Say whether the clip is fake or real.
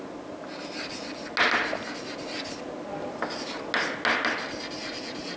real